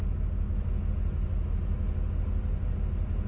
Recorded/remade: recorded